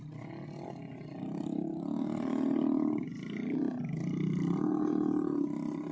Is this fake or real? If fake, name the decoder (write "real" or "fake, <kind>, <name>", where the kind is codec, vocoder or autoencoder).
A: real